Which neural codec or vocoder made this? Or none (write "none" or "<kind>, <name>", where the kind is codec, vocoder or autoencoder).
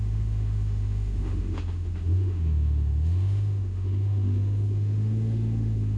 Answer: autoencoder, DAC-VAE